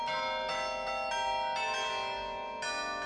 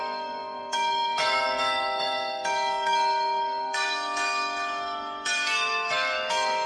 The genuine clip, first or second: first